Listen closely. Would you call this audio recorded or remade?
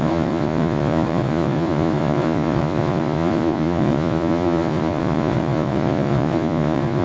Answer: remade